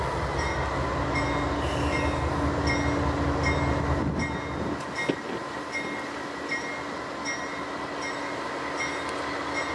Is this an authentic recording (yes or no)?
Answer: yes